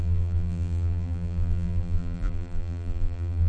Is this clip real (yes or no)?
no